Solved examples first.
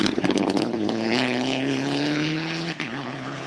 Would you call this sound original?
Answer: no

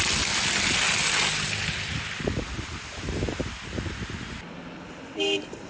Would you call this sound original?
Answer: yes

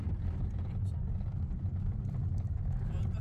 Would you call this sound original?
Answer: yes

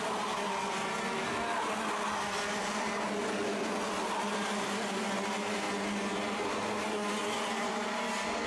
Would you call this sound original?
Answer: yes